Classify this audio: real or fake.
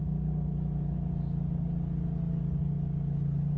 real